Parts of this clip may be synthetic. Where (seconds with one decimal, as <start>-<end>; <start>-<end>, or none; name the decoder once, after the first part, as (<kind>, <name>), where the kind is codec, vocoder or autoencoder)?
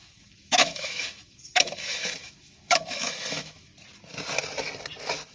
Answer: 0.0-3.7 (autoencoder, DAC-VAE)